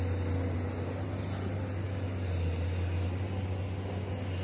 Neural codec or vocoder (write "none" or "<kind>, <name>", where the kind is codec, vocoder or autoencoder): none